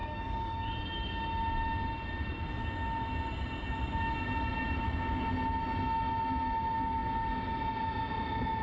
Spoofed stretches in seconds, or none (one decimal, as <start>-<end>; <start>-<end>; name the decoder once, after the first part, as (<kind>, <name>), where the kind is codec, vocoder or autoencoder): 0.0-0.7 (codec, DAC)